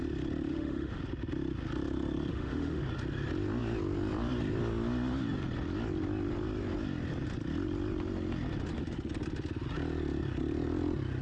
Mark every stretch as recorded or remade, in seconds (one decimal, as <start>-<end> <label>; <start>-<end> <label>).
0.0-0.5 recorded; 0.5-1.0 remade; 1.0-2.3 recorded; 2.3-2.8 remade; 2.8-11.2 recorded